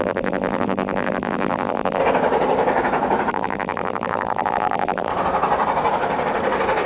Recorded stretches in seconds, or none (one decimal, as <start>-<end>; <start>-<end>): 2.0-3.3; 5.1-6.9

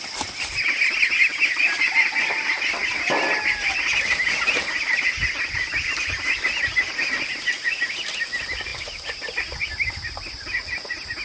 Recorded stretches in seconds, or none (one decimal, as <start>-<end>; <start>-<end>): 0.0-11.2

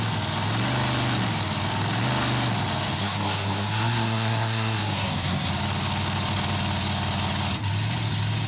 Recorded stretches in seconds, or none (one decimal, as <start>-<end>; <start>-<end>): 0.0-3.0; 5.5-8.5

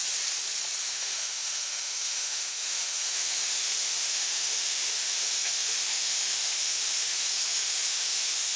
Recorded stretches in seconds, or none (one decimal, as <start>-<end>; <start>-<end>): 0.0-0.8

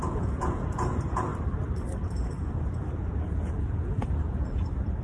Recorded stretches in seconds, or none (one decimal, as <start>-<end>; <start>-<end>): 1.3-2.1

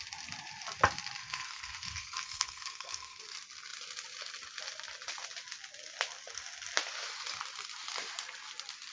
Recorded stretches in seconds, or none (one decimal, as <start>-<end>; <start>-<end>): 0.0-1.2; 3.2-8.9

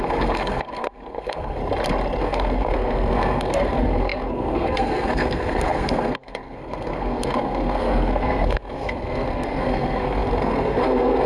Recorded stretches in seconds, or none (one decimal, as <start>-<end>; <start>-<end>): 1.6-2.2

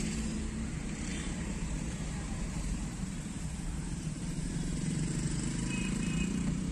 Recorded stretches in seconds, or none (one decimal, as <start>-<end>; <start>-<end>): none